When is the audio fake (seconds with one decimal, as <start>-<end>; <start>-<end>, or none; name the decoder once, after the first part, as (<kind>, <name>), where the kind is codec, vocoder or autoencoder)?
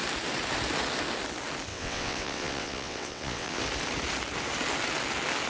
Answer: 1.7-3.6 (vocoder, WaveNeXt)